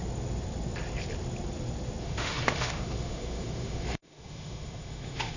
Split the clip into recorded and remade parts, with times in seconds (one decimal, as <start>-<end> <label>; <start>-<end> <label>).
0.0-2.0 recorded; 2.0-5.4 remade

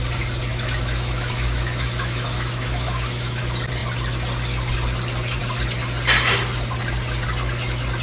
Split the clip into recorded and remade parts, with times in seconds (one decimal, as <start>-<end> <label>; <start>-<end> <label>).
0.0-0.5 recorded; 0.5-3.4 remade; 3.4-8.0 recorded